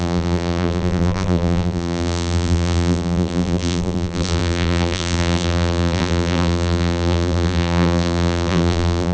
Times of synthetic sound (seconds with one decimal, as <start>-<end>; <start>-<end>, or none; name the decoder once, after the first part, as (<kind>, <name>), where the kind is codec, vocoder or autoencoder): 0.0-9.1 (vocoder, BigVGAN v2)